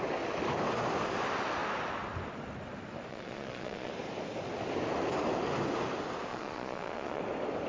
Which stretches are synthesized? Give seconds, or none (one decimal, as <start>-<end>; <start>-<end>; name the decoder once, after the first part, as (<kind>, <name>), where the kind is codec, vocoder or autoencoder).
3.1-3.9 (vocoder, Vocos); 6.3-7.2